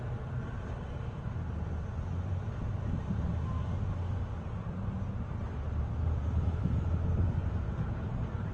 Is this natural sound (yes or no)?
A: no